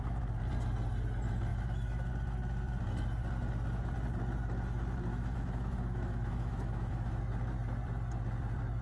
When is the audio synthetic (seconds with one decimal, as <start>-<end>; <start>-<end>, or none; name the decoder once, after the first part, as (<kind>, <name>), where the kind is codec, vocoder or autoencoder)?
1.5-2.1 (autoencoder, DAC-VAE); 5.1-7.2